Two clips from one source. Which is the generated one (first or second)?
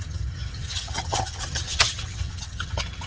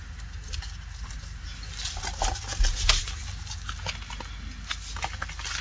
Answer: first